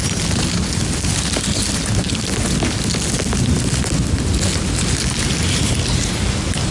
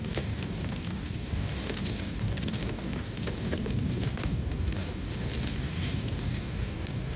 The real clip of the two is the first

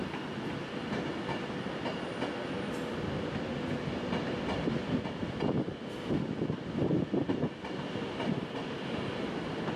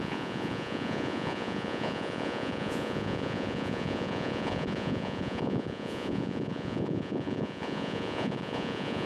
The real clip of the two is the first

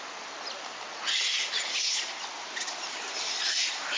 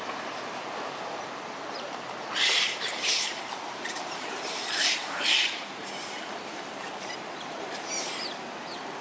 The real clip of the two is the first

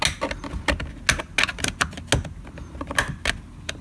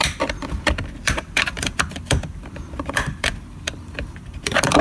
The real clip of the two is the first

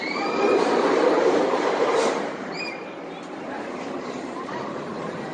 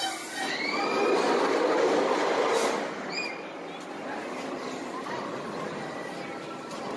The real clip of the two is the second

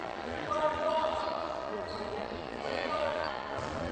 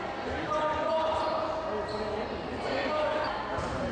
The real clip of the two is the second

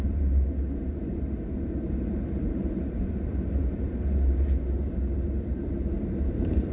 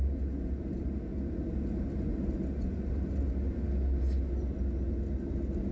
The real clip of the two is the second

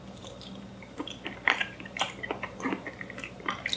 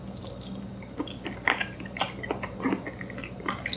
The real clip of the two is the second